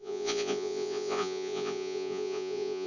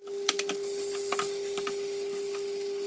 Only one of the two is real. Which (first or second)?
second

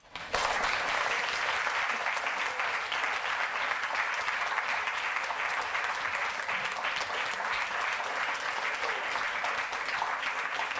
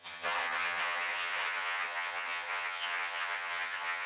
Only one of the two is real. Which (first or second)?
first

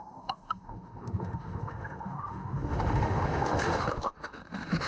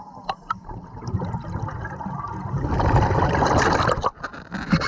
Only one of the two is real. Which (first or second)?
second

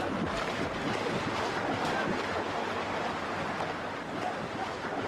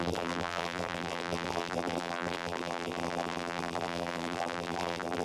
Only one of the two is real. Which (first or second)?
first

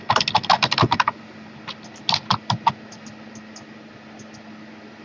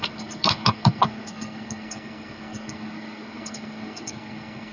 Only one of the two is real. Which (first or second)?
first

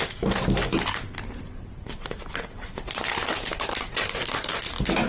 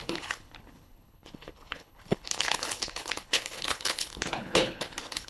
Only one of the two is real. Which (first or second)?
first